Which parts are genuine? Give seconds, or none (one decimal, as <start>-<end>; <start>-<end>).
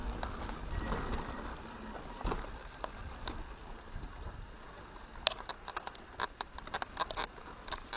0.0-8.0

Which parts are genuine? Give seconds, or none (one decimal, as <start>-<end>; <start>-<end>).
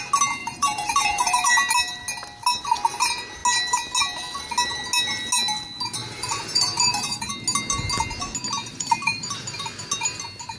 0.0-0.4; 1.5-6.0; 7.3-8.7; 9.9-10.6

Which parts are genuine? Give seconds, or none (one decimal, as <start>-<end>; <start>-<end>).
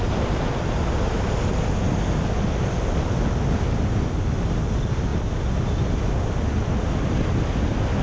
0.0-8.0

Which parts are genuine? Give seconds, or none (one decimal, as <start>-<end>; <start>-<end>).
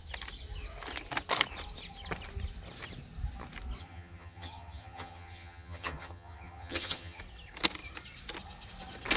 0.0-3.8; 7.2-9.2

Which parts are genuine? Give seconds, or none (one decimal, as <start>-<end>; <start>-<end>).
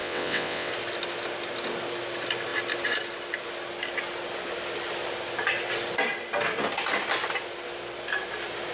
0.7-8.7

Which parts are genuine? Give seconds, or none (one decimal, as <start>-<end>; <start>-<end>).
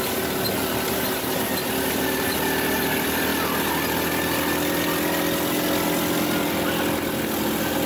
0.0-7.9